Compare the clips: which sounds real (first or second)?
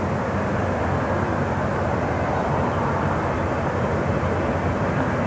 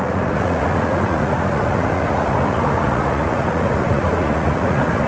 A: first